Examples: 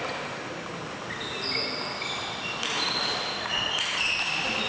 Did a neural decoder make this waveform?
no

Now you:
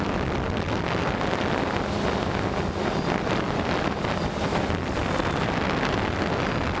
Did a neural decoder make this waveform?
no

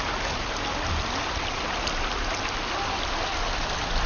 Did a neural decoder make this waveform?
no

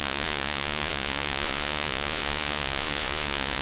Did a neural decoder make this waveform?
yes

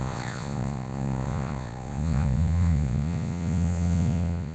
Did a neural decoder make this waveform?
yes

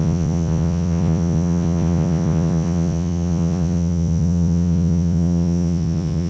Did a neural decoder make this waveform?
yes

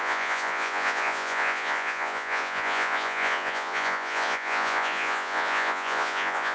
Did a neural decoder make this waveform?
yes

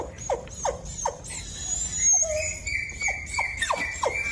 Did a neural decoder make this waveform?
no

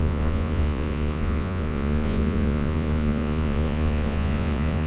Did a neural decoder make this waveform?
yes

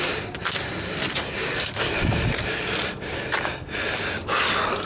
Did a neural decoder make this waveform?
no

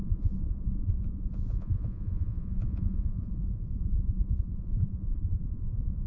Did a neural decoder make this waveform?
yes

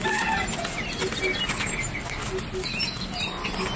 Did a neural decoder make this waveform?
no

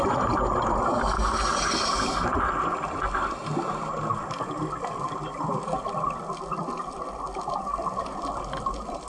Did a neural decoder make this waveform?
no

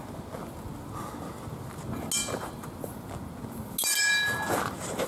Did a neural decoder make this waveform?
no